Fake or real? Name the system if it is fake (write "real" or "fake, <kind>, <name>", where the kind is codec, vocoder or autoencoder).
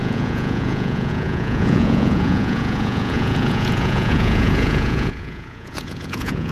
fake, vocoder, Vocos